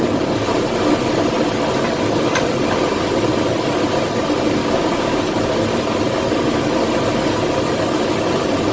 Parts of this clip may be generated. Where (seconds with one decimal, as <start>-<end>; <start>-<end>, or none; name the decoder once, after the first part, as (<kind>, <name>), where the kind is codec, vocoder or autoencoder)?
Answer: 4.6-5.2 (codec, DAC)